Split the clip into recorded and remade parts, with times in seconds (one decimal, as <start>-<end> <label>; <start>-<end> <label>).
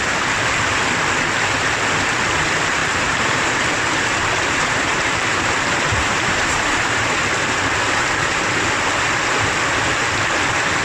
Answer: 0.0-2.8 recorded; 2.8-3.7 remade; 3.7-4.2 recorded; 4.2-7.2 remade; 7.2-10.8 recorded